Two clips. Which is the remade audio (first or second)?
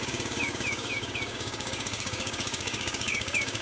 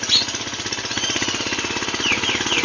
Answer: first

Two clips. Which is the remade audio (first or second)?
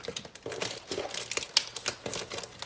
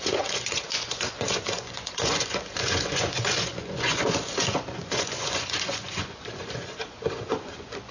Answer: second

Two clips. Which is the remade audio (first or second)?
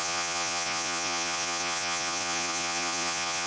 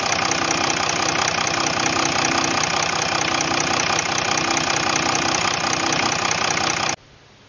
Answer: first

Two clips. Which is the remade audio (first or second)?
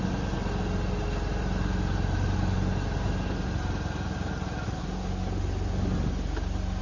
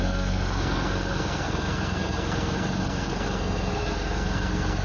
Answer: second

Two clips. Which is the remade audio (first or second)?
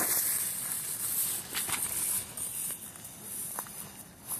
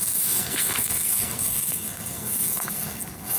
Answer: second